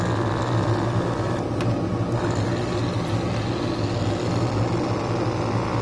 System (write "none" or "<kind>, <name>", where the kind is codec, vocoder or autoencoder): none